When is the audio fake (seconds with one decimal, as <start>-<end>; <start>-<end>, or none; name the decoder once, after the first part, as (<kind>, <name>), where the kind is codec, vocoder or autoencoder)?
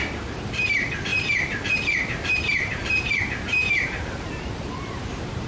0.0-5.5 (vocoder, BigVGAN v2)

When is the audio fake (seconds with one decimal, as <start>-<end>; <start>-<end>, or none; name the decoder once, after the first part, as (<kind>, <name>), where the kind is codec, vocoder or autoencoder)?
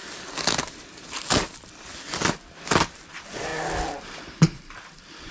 3.1-3.5 (vocoder, BigVGAN v2); 4.0-5.3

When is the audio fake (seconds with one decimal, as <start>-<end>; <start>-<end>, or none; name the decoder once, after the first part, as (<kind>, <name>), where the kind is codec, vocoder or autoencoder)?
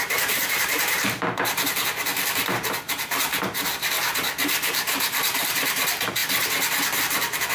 0.0-6.2 (vocoder, BigVGAN v2); 7.0-7.5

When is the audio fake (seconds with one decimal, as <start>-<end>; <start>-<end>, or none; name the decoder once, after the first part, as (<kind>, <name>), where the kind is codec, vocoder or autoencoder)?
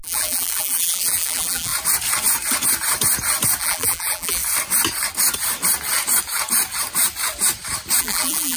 0.0-1.7 (vocoder, BigVGAN v2); 3.6-4.4; 8.0-8.6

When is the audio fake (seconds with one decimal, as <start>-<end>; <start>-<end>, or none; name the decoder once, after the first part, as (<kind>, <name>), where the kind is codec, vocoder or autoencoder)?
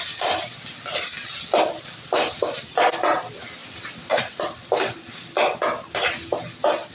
3.6-4.4 (vocoder, BigVGAN v2)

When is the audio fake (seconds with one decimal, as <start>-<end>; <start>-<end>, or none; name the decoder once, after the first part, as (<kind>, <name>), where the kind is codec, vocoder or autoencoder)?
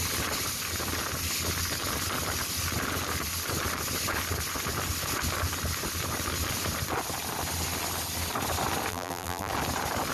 8.9-9.5 (vocoder, BigVGAN v2)